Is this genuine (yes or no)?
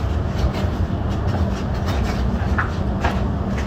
yes